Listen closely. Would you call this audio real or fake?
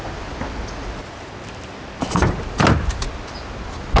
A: real